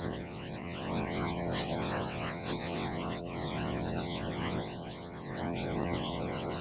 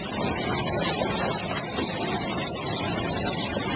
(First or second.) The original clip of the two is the second